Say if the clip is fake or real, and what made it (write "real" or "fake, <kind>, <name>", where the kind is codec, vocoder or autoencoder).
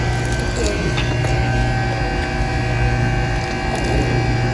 real